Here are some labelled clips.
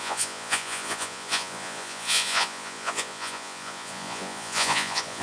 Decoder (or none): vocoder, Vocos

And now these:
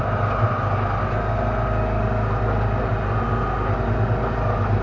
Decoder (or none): none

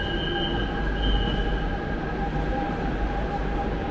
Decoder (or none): none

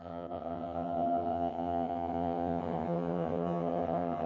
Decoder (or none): vocoder, HiFi-GAN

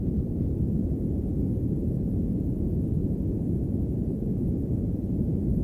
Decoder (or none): vocoder, Vocos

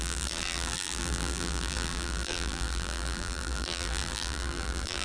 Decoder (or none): vocoder, BigVGAN v2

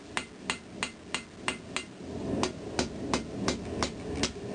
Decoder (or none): none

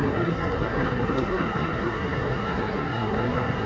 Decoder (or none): codec, SNAC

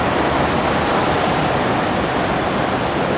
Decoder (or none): none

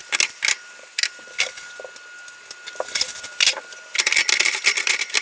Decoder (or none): none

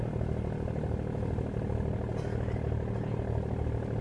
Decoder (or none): none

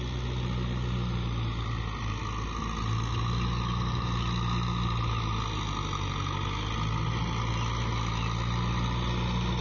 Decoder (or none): none